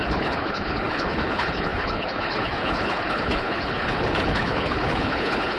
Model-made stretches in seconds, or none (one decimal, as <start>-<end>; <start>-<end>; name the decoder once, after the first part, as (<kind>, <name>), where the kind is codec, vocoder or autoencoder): 0.0-5.6 (codec, HILCodec)